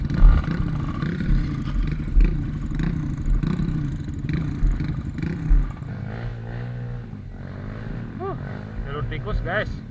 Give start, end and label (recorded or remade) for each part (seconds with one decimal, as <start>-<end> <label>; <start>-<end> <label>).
0.0-9.9 recorded